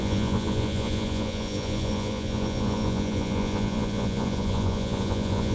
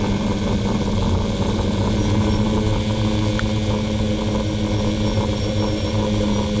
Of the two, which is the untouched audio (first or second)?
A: second